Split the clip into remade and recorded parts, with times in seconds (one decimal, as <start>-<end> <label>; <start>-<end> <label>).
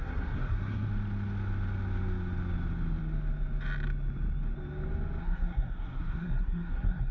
0.0-0.9 remade; 0.9-5.2 recorded; 5.2-7.1 remade